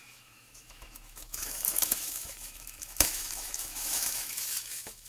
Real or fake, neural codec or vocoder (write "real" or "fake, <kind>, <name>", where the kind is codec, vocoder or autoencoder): fake, autoencoder, DAC-VAE